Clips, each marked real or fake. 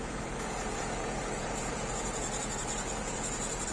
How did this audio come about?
fake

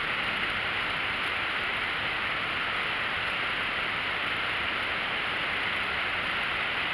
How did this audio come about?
real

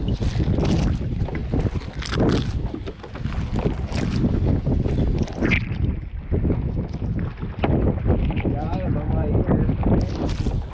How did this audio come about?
real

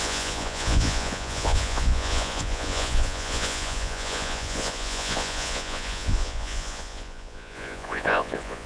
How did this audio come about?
fake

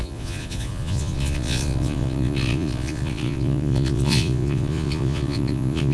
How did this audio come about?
fake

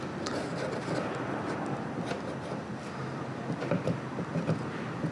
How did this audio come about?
real